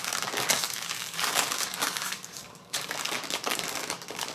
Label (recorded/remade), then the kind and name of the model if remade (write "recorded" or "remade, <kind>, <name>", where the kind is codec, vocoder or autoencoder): remade, codec, DAC